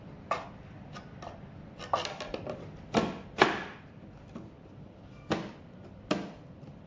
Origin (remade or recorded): recorded